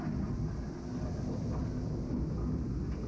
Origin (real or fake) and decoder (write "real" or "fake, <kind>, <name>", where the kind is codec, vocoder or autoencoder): real